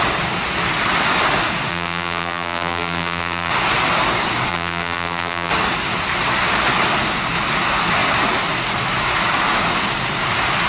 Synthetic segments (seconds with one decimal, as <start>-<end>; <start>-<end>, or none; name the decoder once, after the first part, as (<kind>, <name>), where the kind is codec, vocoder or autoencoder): 1.7-3.5 (vocoder, BigVGAN v2); 4.5-5.5